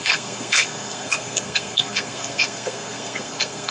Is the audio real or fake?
fake